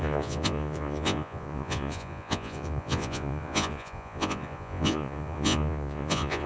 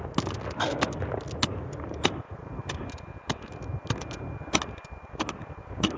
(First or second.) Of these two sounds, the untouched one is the second